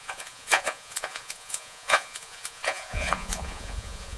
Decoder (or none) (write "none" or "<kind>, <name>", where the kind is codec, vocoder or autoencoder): vocoder, Vocos